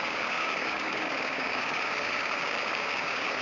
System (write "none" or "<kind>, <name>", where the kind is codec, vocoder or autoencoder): codec, DAC